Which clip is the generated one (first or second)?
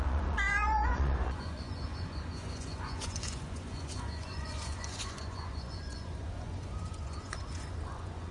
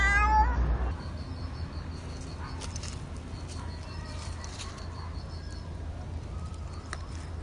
first